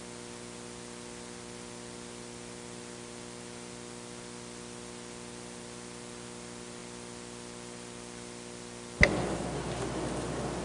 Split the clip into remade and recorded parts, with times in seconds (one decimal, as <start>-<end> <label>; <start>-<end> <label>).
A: 0.0-10.6 recorded